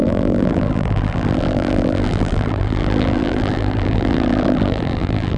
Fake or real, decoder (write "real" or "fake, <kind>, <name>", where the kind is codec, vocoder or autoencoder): fake, vocoder, BigVGAN v2